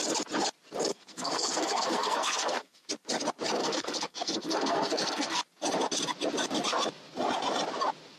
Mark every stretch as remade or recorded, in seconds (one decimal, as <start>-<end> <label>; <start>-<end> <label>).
0.0-0.9 recorded; 0.9-2.9 remade; 2.9-3.6 recorded; 3.6-5.4 remade; 5.4-8.2 recorded